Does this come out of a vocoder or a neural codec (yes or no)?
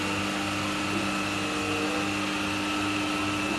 no